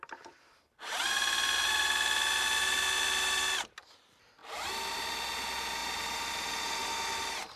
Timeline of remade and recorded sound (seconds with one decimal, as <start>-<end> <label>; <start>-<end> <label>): 0.0-7.6 recorded